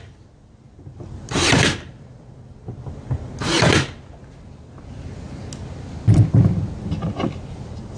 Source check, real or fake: real